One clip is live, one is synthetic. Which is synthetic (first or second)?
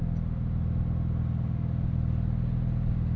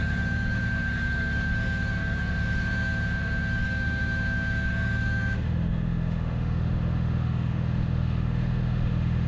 second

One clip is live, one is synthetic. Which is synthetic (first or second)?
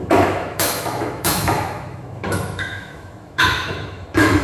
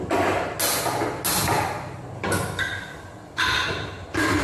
first